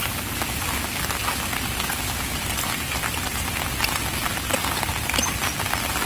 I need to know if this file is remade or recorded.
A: recorded